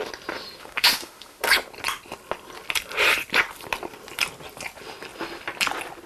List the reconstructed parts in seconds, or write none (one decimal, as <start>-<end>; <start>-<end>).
0.6-1.4